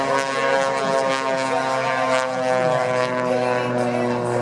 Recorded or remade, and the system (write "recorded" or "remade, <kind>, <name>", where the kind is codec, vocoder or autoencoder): recorded